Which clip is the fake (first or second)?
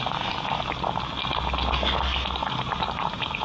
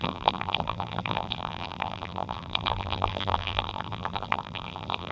second